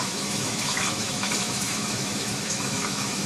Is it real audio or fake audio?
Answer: fake